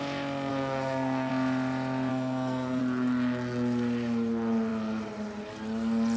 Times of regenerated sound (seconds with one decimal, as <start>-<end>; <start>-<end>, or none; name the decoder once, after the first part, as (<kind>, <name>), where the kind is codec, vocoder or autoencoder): 0.5-1.3 (codec, SNAC); 2.1-2.8